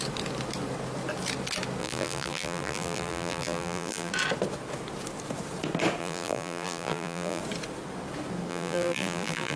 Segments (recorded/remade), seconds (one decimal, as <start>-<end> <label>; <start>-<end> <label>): 0.0-1.8 recorded; 1.8-4.1 remade; 4.1-6.0 recorded; 6.0-7.4 remade; 7.4-8.5 recorded; 8.5-9.6 remade